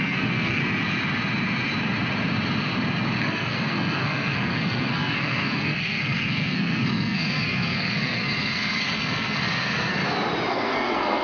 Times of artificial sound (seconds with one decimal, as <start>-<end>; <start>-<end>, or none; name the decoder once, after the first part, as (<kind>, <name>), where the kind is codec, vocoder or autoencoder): 0.0-0.6 (codec, SNAC); 3.2-10.0; 10.5-11.2